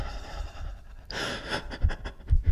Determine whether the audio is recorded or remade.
remade